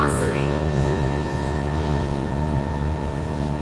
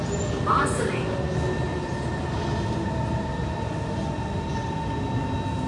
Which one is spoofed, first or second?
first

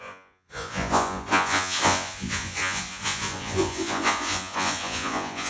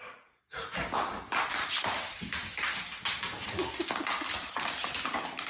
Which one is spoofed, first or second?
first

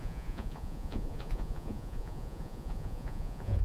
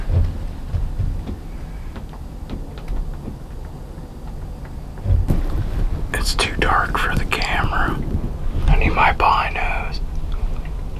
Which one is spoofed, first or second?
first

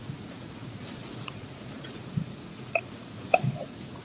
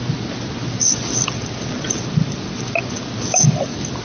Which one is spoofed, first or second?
first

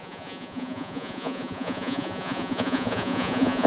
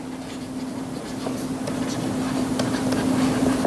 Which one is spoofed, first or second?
first